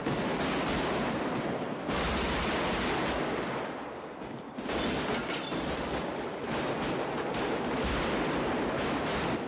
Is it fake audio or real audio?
real